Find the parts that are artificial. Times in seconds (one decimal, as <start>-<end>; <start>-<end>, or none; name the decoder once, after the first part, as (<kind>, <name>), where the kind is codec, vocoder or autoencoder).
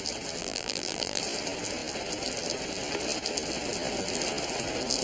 0.4-1.2 (vocoder, BigVGAN v2)